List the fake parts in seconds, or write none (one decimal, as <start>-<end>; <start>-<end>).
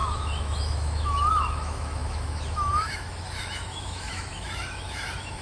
0.0-5.4